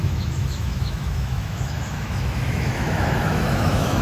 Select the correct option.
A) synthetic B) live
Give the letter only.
A